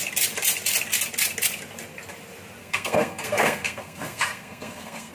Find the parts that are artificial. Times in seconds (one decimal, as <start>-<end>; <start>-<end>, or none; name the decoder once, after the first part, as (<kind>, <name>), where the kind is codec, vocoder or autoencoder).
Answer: 2.6-5.1 (codec, SNAC)